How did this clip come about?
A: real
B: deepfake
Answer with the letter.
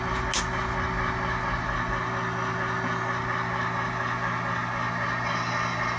A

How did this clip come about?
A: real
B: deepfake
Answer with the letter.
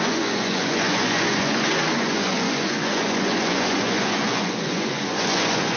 B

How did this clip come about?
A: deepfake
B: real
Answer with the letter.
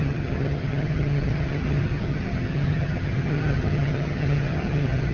A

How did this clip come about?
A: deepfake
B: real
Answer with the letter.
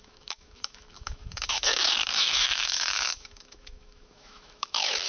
A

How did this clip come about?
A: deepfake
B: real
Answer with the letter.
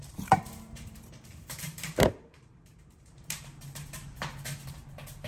A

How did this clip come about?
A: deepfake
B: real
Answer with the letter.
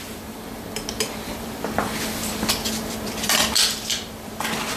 A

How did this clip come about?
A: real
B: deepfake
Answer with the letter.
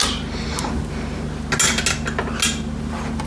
A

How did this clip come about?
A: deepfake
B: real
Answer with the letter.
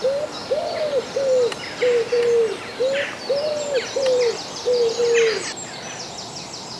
B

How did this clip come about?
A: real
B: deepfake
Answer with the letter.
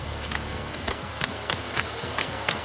B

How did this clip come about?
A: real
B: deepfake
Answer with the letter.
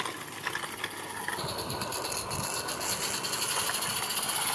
A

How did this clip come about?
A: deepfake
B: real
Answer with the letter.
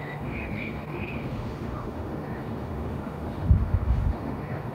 A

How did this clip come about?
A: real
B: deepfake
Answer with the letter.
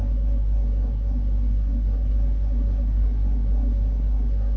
B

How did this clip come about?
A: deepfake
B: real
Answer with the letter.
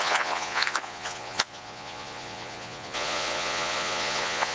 A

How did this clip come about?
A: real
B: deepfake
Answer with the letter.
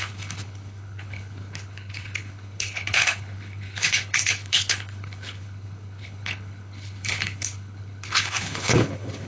B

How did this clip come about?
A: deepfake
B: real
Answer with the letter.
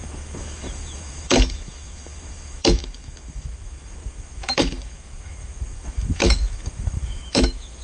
A